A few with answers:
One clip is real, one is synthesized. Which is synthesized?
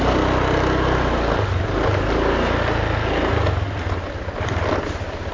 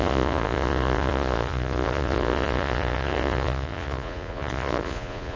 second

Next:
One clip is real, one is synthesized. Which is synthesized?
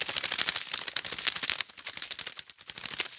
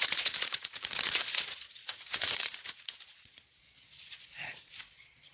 second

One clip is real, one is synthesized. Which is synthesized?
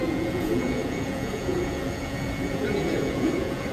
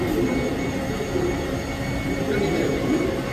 first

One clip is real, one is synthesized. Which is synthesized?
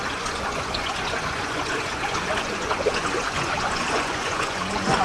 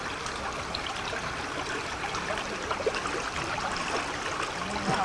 first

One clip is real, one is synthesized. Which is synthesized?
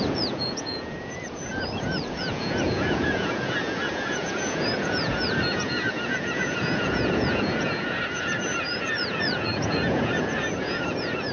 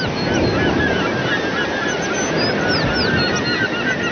first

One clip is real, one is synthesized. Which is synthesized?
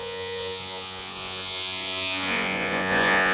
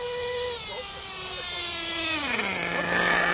first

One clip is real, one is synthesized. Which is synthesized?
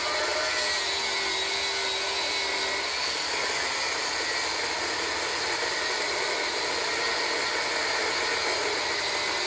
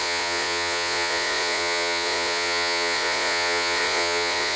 second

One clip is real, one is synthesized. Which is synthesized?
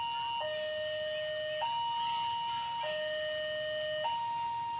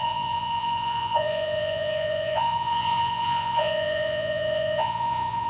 second